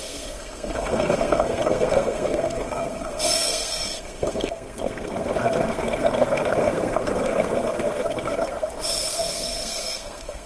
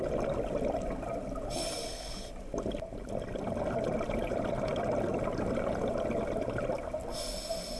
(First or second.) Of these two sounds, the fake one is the first